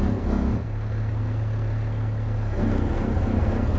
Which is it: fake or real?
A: fake